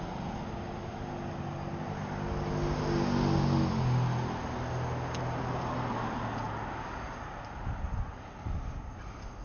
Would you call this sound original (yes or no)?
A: yes